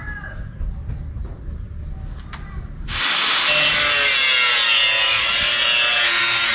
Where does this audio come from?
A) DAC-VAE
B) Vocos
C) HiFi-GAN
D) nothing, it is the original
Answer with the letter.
D